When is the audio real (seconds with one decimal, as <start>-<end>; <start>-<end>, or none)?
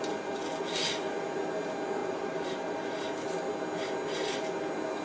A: 0.0-2.0; 3.0-5.0